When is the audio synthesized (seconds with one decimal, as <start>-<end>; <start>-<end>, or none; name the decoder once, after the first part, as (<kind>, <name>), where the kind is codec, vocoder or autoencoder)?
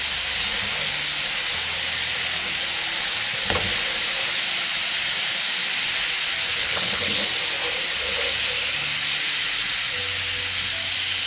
6.6-7.2 (codec, HILCodec)